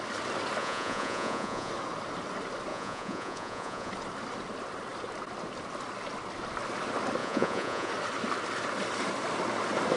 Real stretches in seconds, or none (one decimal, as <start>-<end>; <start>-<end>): 0.0-0.6; 1.7-2.7; 3.9-7.2; 7.9-10.0

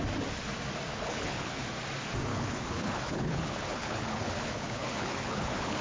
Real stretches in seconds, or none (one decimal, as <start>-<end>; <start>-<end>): 0.0-0.9; 1.6-2.3